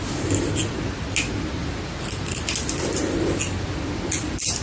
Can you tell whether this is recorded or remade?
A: recorded